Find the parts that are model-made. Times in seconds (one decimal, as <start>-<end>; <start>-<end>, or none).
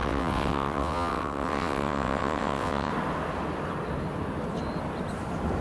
0.0-2.9